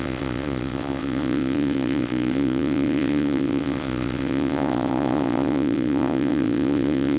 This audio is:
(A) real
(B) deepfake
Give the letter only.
B